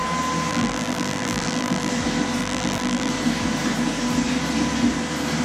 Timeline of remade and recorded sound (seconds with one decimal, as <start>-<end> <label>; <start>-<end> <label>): 0.0-0.5 recorded; 0.5-1.9 remade; 1.9-2.4 recorded; 2.4-3.1 remade; 3.1-5.4 recorded